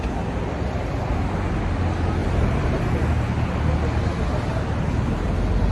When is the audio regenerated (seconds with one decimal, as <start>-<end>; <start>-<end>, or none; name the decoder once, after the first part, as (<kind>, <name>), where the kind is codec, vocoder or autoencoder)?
2.2-2.8 (vocoder, BigVGAN v2)